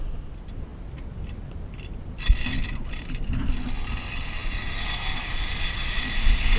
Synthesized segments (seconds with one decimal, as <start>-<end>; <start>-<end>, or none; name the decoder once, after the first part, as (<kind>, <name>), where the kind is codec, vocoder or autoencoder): none